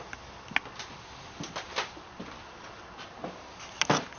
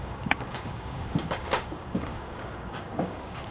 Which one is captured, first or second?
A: first